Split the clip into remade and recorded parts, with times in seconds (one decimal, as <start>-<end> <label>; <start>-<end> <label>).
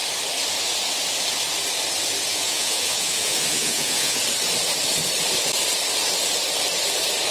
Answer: 0.0-2.3 recorded; 2.3-4.2 remade; 4.2-7.3 recorded